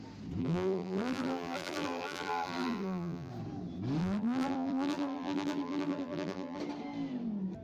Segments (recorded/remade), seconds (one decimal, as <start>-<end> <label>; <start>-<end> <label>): 0.0-0.4 recorded; 0.4-3.3 remade; 3.3-4.0 recorded; 4.0-6.6 remade; 6.6-7.6 recorded